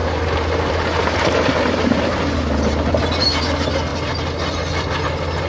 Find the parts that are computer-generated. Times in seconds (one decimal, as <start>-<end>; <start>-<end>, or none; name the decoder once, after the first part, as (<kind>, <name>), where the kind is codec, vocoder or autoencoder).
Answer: none